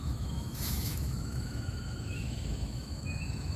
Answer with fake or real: fake